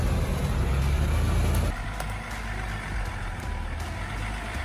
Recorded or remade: recorded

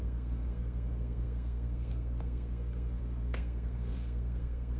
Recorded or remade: remade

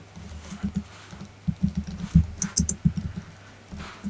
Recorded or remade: recorded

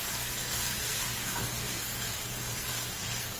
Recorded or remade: remade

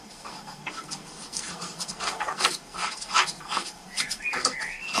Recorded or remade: remade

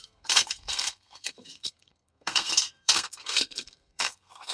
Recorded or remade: remade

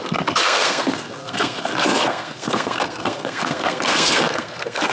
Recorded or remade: remade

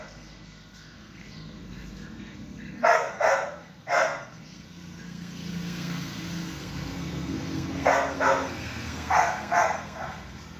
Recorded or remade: remade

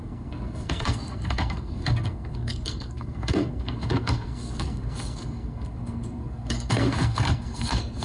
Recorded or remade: remade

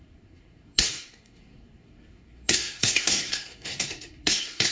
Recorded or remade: remade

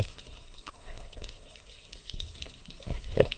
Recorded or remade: remade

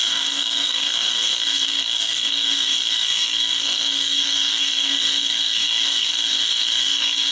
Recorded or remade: remade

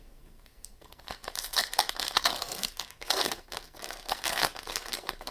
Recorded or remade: remade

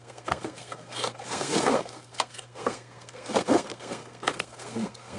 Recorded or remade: remade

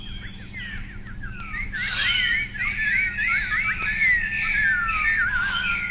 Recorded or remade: recorded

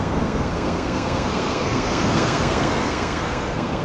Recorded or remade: remade